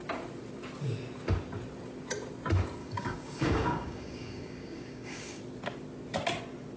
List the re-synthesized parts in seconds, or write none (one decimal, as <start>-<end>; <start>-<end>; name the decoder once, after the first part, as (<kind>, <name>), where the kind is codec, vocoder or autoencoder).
2.8-5.4 (codec, DAC)